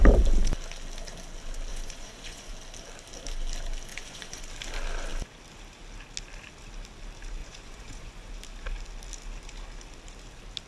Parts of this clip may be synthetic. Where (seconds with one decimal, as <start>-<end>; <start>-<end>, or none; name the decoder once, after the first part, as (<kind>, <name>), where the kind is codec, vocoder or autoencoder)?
1.7-2.5 (vocoder, Vocos); 3.9-4.4; 7.4-8.3